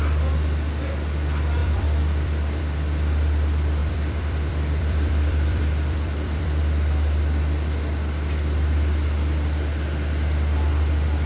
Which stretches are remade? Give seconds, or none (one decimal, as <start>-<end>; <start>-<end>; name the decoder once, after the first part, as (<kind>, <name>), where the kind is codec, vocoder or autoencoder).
1.6-2.6 (vocoder, BigVGAN v2); 3.8-6.6